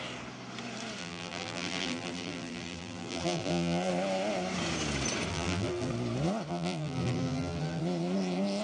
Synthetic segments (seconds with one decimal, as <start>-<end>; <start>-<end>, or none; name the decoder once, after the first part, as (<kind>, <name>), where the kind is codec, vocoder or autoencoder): 1.0-3.9 (vocoder, BigVGAN v2); 5.3-5.9; 6.5-7.8